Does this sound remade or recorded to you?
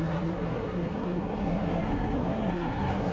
remade